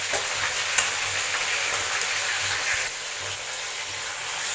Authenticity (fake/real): real